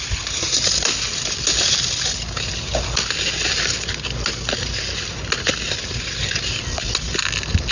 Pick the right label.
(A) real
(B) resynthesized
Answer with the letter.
A